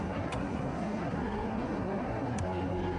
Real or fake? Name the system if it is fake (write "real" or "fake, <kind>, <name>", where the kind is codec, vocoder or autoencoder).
fake, codec, SNAC